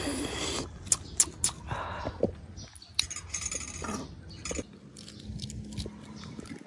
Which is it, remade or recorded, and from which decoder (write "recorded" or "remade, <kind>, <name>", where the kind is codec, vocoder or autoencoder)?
recorded